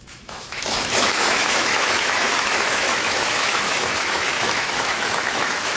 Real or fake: fake